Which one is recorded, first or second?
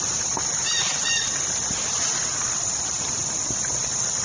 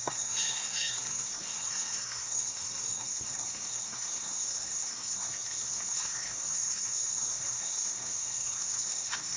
first